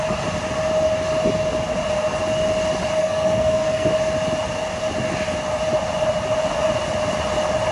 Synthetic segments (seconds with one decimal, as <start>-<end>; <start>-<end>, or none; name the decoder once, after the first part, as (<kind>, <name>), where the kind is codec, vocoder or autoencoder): 3.0-3.9 (codec, SNAC)